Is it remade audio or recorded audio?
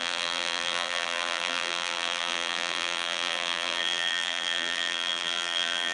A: remade